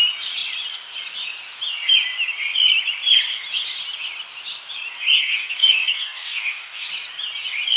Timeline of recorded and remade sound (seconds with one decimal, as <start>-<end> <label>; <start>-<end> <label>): 0.0-5.2 recorded; 5.2-6.9 remade; 6.9-7.8 recorded